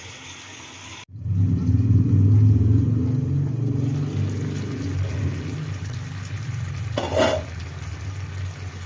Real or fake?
real